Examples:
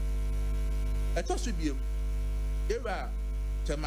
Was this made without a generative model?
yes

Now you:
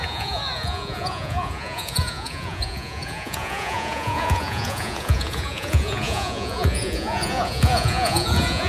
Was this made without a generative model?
no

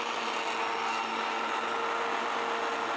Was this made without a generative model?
yes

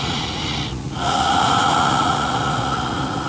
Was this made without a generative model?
no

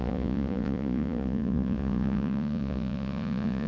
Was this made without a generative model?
no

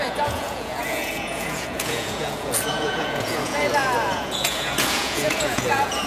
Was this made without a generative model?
no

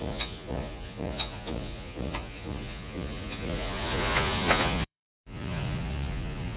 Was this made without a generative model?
no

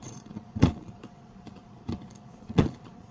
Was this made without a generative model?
no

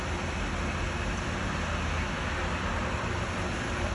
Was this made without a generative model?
yes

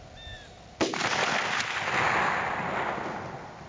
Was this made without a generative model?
yes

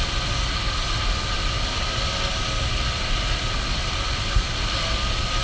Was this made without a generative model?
yes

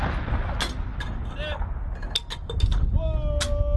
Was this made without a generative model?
yes